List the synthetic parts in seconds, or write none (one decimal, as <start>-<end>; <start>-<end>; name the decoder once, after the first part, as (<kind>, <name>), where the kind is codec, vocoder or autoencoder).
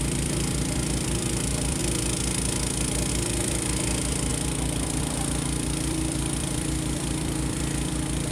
0.0-1.8 (vocoder, BigVGAN v2); 3.1-8.3